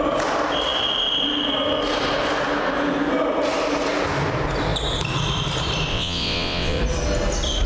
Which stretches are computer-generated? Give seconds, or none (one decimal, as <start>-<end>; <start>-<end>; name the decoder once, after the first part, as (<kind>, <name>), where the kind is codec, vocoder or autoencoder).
5.9-6.8 (vocoder, WaveNeXt)